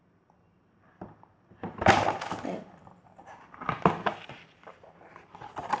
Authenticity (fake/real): fake